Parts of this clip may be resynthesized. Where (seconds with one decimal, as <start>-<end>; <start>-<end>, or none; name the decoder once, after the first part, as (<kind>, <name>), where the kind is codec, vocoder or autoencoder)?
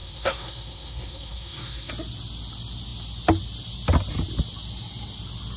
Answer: 0.0-1.9 (codec, SNAC)